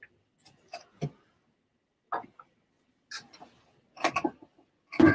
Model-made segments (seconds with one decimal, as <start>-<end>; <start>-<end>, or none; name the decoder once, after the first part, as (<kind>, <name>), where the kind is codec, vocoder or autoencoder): none